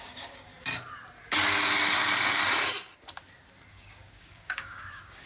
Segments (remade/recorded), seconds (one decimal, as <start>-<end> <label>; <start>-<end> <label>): 0.0-0.5 remade; 0.5-3.7 recorded; 3.7-5.3 remade